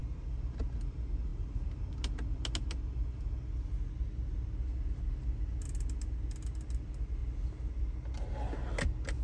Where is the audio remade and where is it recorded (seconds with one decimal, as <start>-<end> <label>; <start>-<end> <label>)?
0.0-9.2 recorded

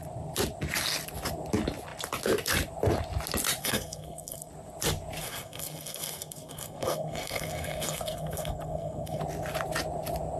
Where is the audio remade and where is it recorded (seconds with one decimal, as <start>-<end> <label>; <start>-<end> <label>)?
0.0-3.6 recorded; 3.6-4.5 remade; 4.5-5.2 recorded; 5.2-9.2 remade; 9.2-10.4 recorded

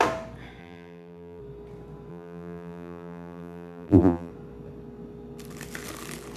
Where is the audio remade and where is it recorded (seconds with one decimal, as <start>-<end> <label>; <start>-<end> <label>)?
0.0-0.6 recorded; 0.6-1.4 remade; 1.4-2.1 recorded; 2.1-4.3 remade; 4.3-6.4 recorded

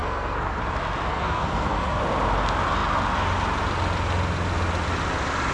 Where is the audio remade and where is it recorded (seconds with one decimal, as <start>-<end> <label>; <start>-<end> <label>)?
0.0-0.6 remade; 0.6-1.1 recorded; 1.1-2.0 remade; 2.0-5.5 recorded

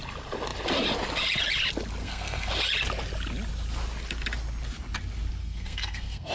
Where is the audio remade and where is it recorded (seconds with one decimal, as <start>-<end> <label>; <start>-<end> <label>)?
0.0-2.0 recorded; 2.0-2.5 remade; 2.5-5.4 recorded; 5.4-6.3 remade

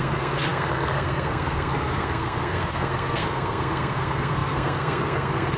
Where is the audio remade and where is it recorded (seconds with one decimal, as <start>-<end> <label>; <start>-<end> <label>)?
0.0-5.6 remade